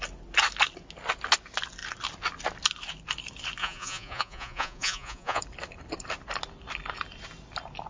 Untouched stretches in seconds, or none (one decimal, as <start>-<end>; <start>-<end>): 0.0-3.6; 5.4-7.9